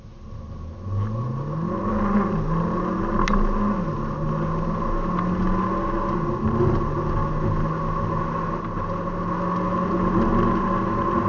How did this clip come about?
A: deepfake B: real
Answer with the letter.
B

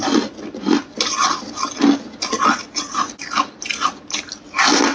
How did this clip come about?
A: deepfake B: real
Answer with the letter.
B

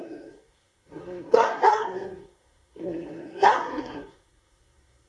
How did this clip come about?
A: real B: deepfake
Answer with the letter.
B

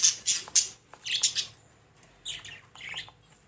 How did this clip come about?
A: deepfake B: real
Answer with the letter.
B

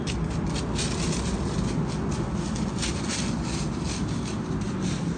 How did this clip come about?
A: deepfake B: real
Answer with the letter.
B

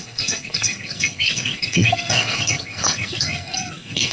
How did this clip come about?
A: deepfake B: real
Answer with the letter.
A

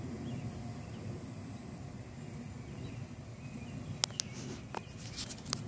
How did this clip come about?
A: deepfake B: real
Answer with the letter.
B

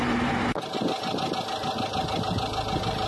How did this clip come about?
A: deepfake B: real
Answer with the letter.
B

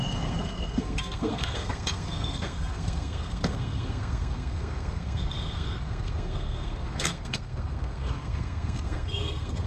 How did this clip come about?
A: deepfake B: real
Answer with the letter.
A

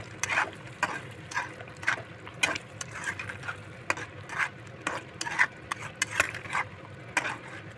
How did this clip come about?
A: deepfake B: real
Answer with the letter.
B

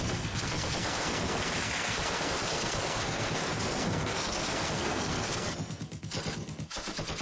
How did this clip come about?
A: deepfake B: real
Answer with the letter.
A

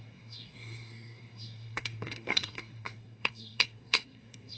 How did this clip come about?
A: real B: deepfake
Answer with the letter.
B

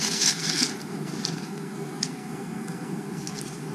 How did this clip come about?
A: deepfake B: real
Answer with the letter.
A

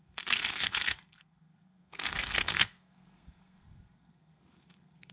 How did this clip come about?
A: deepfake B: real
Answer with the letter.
A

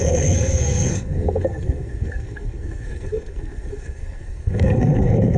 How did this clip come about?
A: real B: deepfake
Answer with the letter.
B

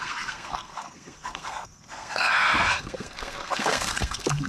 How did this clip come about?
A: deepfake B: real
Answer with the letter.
A